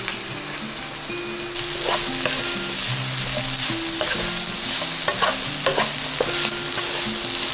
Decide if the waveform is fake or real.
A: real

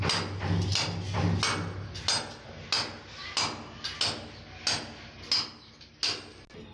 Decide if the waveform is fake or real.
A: real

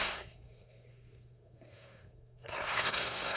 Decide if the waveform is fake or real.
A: fake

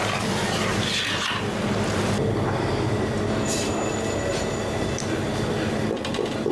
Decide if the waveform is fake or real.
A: real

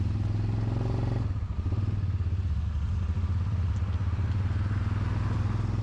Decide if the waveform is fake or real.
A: real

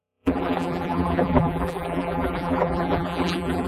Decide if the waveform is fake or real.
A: fake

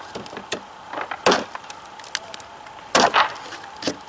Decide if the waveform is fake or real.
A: real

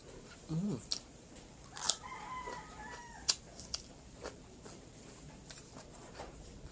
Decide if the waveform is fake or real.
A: fake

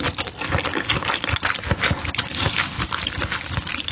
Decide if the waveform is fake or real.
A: real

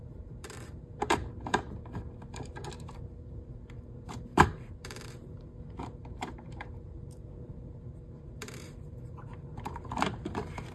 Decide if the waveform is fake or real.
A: fake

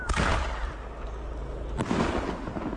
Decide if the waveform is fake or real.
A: real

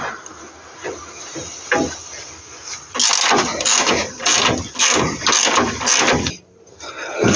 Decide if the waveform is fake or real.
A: real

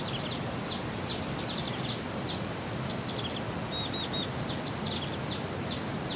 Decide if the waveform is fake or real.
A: real